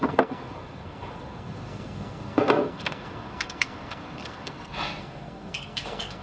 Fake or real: fake